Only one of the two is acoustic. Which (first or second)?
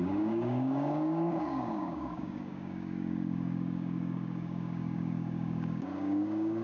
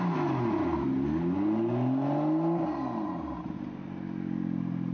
second